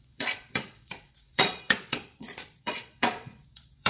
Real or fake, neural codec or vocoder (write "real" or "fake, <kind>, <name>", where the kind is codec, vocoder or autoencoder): fake, vocoder, Vocos